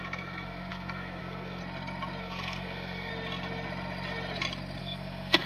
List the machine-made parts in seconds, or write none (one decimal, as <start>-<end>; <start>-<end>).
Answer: 0.0-1.6; 2.2-3.1; 4.8-5.5